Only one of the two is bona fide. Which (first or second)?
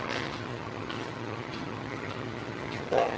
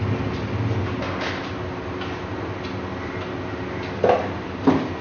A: second